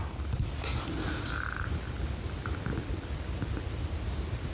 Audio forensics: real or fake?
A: real